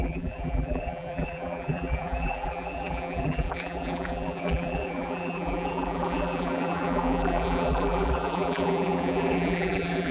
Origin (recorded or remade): remade